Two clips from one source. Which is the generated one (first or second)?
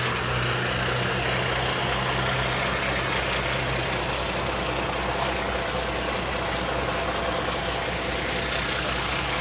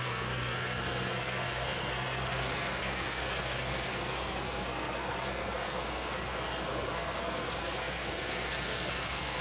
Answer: second